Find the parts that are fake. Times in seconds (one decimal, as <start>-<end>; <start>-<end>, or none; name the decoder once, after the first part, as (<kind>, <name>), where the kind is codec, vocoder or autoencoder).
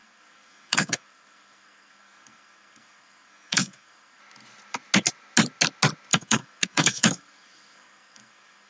0.0-4.2 (codec, SNAC); 6.1-8.7